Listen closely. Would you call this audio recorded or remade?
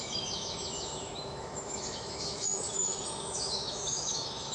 remade